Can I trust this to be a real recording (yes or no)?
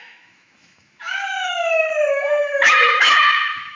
no